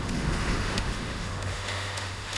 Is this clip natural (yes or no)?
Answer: no